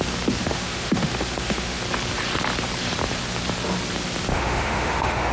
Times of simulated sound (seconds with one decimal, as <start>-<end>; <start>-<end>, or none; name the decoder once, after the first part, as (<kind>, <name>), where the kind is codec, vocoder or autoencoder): 0.4-1.8 (autoencoder, DAC-VAE); 4.3-5.3